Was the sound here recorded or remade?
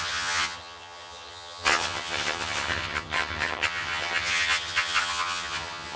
remade